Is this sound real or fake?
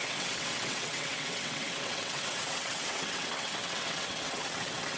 fake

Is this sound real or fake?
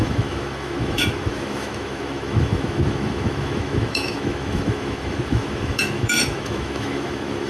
fake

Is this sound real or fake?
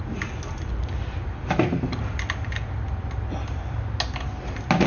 real